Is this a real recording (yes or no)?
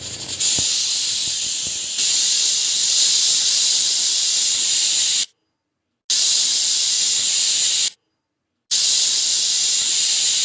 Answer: yes